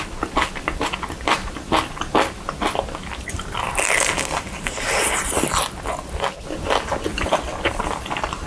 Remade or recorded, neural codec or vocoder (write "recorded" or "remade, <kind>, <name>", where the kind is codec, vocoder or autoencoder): recorded